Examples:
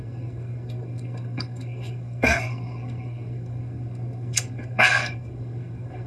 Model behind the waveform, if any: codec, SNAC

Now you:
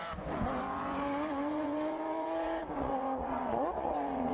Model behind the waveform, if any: vocoder, Vocos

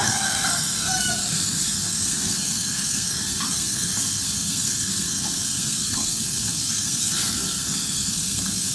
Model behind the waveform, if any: codec, SNAC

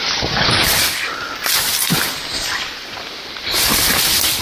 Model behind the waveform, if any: none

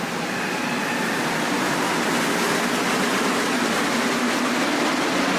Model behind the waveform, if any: none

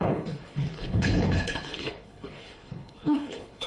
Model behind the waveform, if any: codec, HILCodec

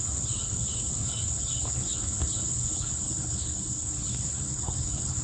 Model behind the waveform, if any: codec, HILCodec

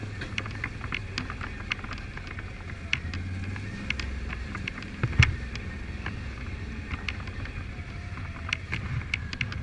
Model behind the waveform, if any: none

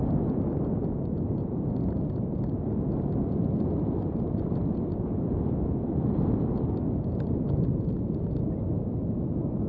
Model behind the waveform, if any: none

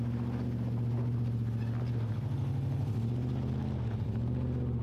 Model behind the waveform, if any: none